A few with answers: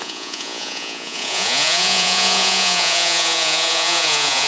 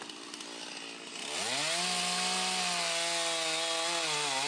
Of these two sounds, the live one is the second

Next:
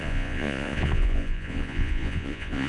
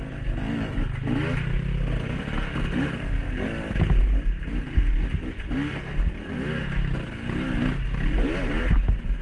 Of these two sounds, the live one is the second